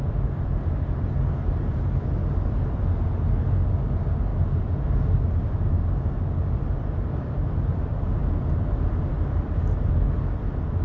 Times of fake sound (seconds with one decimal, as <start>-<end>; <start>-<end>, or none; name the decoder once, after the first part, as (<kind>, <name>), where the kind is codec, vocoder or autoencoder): none